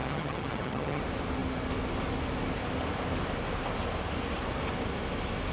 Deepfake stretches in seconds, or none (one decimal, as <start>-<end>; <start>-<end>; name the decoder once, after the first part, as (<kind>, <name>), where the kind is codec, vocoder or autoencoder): 0.0-1.0 (vocoder, HiFi-GAN)